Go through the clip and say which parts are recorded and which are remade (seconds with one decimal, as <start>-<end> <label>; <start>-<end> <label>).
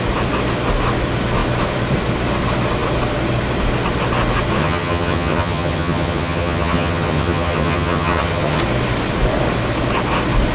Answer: 0.0-4.6 recorded; 4.6-8.6 remade; 8.6-10.5 recorded